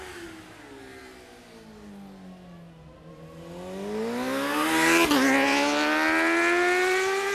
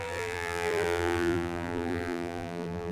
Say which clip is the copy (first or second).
second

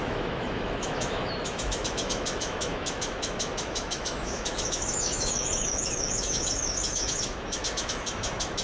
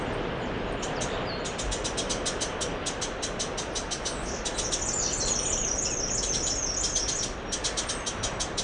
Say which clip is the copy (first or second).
first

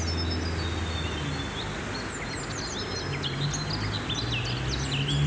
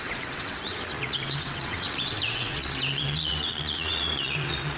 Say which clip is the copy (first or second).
second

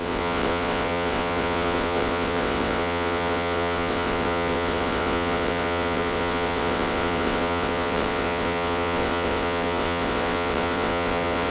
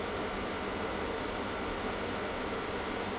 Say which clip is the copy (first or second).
first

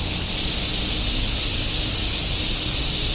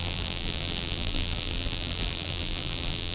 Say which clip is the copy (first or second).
second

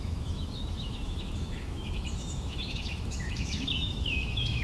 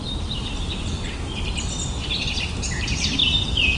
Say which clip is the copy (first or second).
first